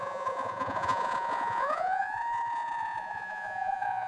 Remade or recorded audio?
remade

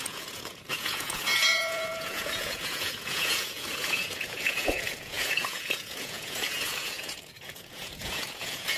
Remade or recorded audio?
remade